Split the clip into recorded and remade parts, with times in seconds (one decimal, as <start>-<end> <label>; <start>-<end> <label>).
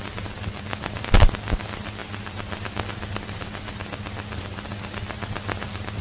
0.0-6.0 recorded